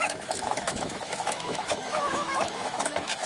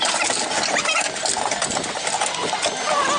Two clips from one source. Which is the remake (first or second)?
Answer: first